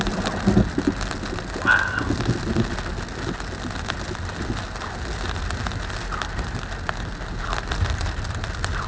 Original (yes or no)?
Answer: yes